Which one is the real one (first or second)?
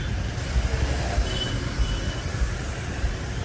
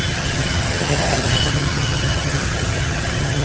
first